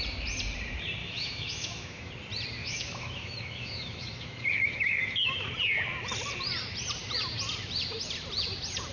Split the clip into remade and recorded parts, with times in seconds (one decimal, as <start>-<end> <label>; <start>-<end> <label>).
0.0-1.0 recorded; 1.0-2.1 remade; 2.1-2.6 recorded; 2.6-5.5 remade; 5.5-8.9 recorded